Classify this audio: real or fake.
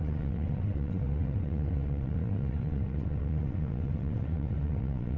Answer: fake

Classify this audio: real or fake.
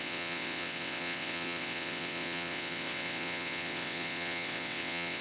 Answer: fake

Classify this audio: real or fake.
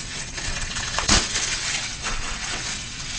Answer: fake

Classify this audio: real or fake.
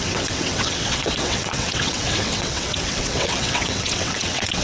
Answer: fake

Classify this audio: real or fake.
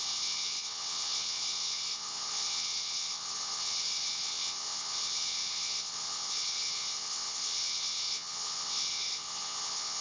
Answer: fake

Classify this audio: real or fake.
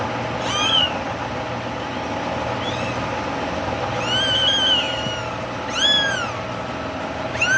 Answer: real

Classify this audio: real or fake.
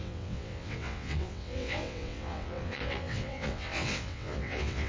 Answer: fake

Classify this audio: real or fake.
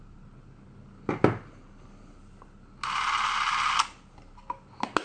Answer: real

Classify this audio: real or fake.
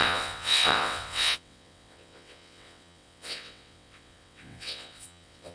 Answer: fake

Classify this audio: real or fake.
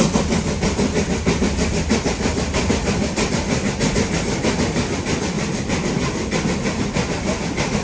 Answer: real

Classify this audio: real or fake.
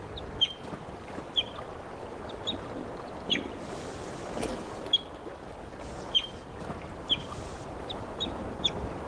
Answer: real